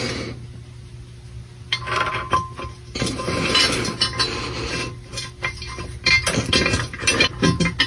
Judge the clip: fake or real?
real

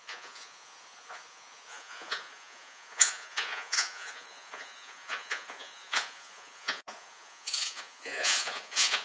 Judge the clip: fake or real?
fake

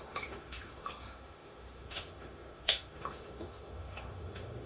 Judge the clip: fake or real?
fake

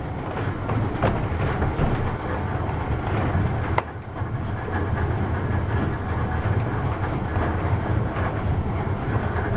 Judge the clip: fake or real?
real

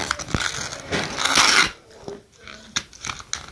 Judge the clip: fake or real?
real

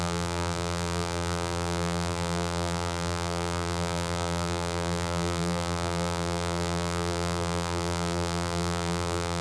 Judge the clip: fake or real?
fake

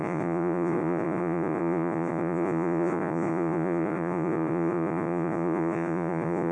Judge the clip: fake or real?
fake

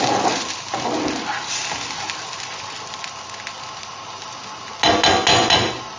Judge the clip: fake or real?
real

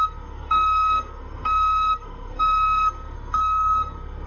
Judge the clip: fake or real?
fake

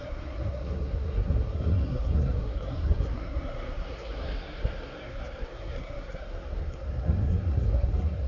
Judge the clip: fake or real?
fake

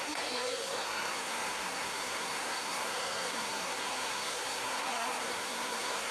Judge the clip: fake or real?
fake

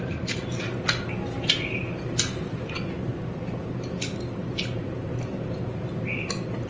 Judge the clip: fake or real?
real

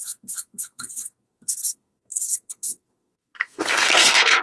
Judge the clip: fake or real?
fake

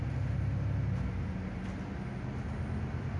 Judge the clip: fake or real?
real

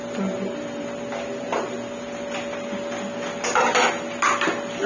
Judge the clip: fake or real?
real